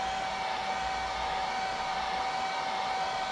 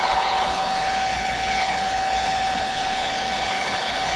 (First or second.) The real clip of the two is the first